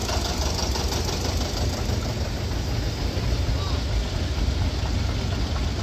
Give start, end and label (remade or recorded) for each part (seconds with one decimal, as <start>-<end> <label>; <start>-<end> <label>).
0.0-5.8 recorded